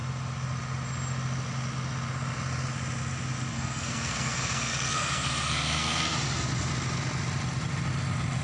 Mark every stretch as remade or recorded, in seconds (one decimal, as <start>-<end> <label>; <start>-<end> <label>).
0.0-3.5 recorded; 3.5-6.1 remade; 6.1-8.4 recorded